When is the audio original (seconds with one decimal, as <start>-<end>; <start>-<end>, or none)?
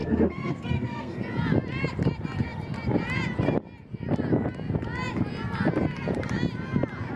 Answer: 1.2-7.2